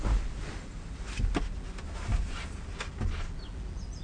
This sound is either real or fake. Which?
real